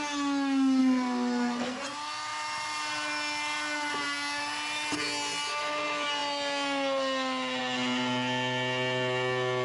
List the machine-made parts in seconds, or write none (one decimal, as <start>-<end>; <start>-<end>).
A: 0.8-1.8